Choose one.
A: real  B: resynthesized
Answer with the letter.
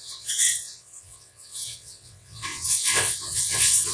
B